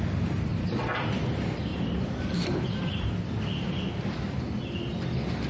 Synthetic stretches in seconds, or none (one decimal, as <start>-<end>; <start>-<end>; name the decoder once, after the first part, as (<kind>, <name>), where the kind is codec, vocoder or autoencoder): 0.5-1.1 (vocoder, BigVGAN v2); 1.7-3.1